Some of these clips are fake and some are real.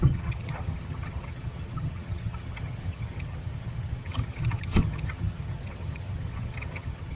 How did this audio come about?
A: fake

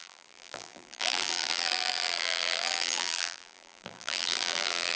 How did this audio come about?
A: fake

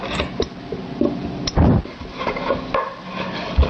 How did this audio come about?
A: real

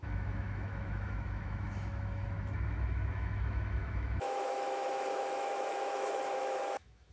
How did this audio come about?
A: fake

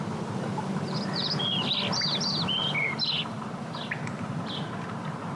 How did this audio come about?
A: fake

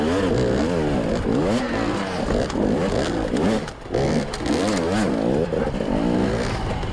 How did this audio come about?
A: real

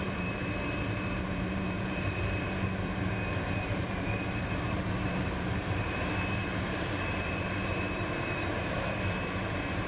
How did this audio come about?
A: fake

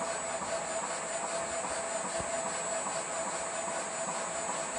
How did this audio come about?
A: real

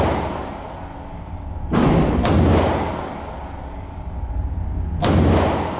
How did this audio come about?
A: real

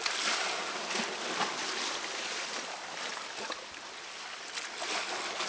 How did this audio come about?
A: real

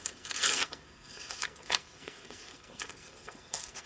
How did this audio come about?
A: fake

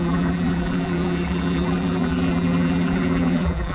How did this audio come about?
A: fake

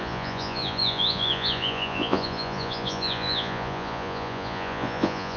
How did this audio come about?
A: fake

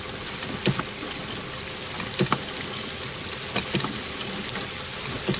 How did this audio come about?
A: real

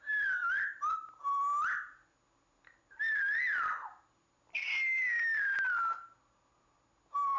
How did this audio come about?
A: real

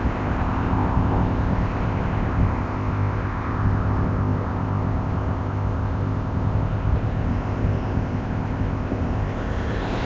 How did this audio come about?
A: fake